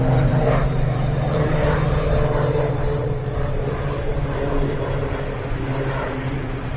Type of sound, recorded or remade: remade